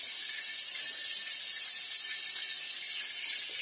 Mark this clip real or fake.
real